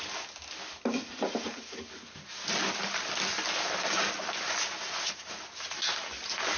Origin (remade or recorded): recorded